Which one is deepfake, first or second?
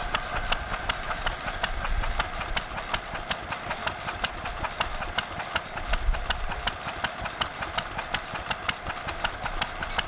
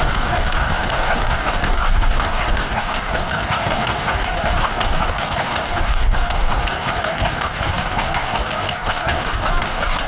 second